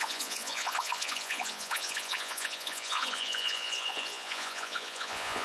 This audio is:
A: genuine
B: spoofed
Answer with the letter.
B